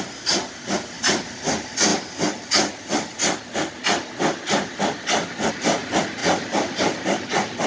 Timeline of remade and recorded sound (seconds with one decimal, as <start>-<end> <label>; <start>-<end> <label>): 0.0-6.2 recorded; 6.2-7.7 remade